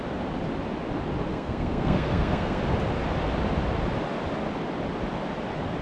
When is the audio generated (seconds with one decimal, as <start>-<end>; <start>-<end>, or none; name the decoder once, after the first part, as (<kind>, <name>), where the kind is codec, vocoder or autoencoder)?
1.3-2.6 (codec, SNAC)